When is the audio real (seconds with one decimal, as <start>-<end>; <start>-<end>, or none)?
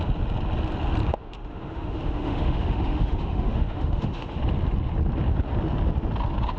0.0-1.1; 4.4-6.6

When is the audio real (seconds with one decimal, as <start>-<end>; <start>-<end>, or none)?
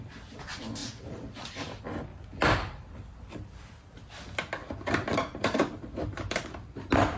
0.0-0.8; 1.8-2.3; 3.7-4.6; 6.8-7.2